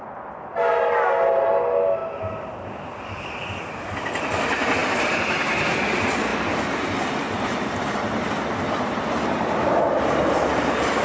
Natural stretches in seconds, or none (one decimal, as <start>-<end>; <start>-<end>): 0.0-11.0